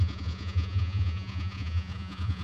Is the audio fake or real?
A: fake